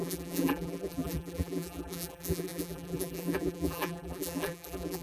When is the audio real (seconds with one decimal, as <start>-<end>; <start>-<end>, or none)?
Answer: none